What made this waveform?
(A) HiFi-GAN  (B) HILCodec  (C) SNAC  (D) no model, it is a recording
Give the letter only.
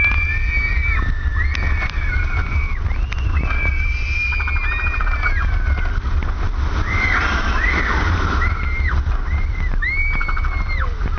D